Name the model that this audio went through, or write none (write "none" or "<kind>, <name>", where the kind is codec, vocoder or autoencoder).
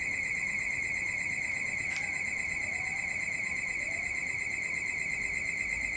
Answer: none